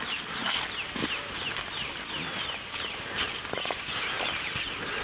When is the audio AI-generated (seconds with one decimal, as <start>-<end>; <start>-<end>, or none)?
none